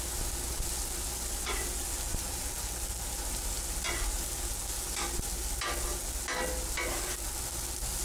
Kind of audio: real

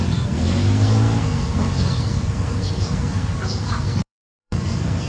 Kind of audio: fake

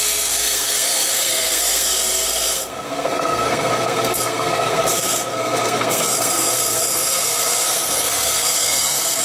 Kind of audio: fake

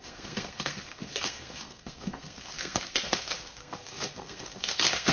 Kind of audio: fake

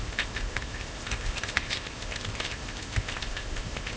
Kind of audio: fake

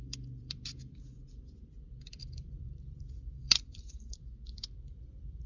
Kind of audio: fake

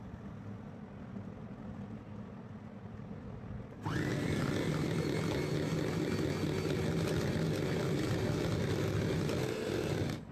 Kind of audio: real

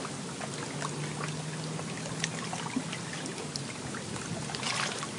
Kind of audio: real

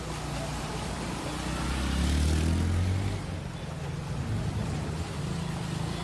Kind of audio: real